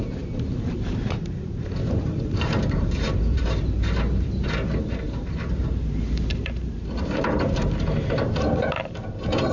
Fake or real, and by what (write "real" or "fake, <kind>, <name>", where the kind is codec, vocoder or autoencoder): fake, vocoder, BigVGAN v2